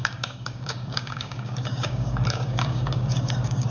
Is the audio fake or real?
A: fake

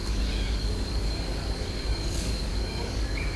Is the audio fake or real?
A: fake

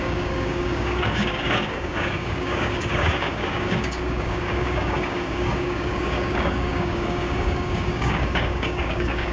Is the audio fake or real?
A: fake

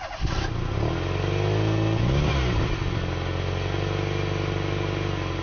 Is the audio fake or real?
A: real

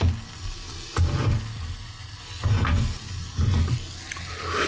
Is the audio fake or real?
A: real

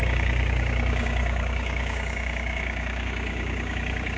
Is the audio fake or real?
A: fake